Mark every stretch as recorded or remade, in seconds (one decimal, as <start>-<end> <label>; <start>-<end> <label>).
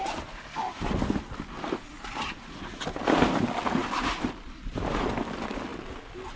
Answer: 0.0-6.4 recorded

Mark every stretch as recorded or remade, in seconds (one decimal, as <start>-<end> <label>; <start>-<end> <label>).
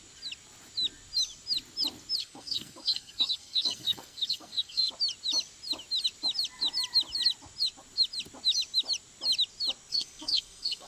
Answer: 0.0-2.2 recorded; 2.2-4.9 remade; 4.9-9.9 recorded; 9.9-10.9 remade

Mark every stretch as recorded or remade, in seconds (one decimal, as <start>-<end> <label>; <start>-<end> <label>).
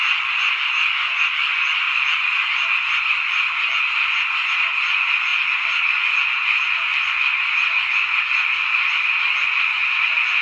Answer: 0.0-10.4 recorded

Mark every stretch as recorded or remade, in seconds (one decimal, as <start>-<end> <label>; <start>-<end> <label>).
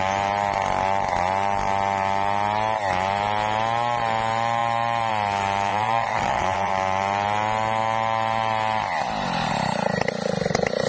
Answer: 0.0-5.7 recorded; 5.7-6.7 remade; 6.7-10.9 recorded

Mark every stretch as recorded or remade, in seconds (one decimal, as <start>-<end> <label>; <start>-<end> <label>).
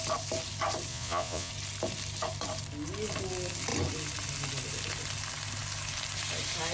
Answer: 0.0-0.9 recorded; 0.9-1.5 remade; 1.5-6.7 recorded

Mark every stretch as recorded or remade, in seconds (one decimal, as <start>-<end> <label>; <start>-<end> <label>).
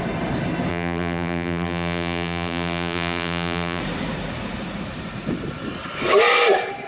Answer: 0.0-0.7 recorded; 0.7-3.8 remade; 3.8-6.9 recorded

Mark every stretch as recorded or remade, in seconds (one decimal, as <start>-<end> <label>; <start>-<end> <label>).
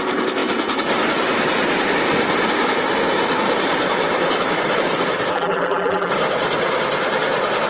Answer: 0.0-5.3 recorded; 5.3-6.1 remade; 6.1-7.7 recorded